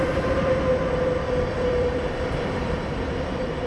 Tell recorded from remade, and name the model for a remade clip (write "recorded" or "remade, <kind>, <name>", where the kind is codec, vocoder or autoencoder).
remade, vocoder, BigVGAN v2